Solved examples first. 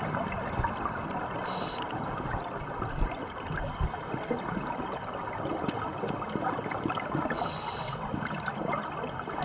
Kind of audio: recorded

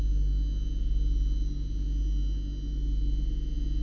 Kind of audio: recorded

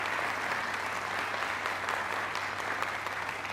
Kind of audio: recorded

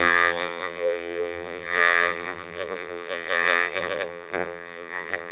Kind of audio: remade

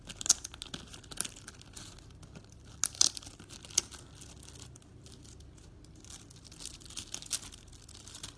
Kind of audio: recorded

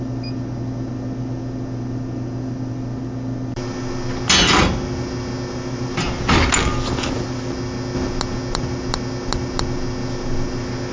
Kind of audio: recorded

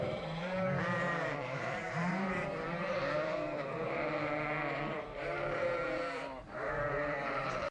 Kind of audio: remade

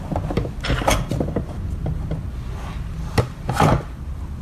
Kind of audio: recorded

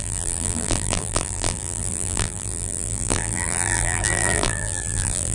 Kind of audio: remade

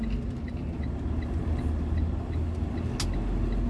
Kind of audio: recorded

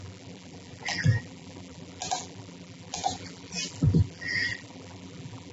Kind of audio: remade